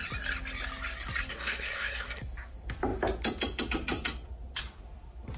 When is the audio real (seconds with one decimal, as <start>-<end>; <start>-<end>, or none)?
0.0-1.3; 2.2-5.4